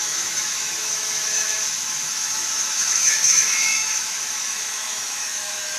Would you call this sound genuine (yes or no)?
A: no